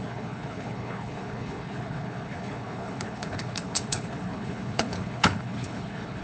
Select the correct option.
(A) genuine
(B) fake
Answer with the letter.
B